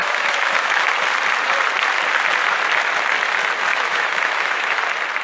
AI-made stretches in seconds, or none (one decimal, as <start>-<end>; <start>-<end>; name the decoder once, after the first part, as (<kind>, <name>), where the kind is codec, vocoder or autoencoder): 0.0-0.8 (autoencoder, DAC-VAE); 3.7-4.8